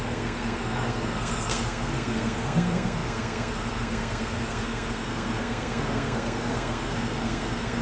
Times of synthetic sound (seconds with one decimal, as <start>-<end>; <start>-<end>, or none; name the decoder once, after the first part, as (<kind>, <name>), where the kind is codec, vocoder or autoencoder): 0.0-7.8 (codec, SNAC)